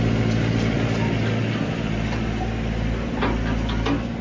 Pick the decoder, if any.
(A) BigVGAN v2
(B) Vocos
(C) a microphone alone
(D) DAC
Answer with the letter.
C